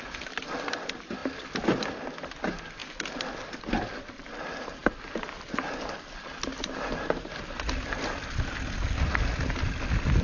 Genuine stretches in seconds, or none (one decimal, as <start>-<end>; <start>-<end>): 0.0-10.2

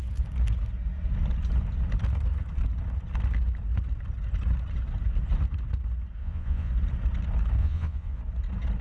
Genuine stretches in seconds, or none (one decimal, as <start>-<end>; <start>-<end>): 0.0-6.2; 6.7-7.6; 8.2-8.8

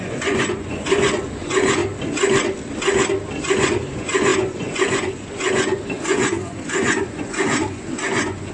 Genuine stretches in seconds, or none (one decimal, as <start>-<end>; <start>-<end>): 1.8-3.4

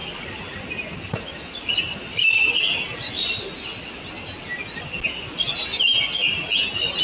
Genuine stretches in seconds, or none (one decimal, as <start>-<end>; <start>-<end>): 0.0-7.0

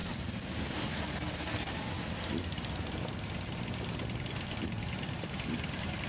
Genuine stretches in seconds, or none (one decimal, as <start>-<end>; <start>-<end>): 0.0-6.1

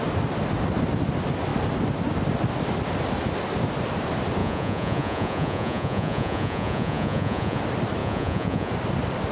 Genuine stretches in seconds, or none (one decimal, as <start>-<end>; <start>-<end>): 0.0-4.4; 7.6-8.0; 8.7-9.3